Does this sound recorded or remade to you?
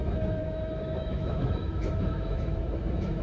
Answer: remade